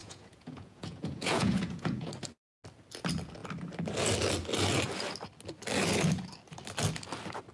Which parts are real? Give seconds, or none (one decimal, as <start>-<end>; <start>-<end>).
2.1-7.5